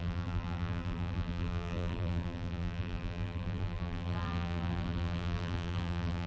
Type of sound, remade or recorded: remade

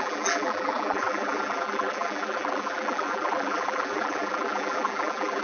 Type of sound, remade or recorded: remade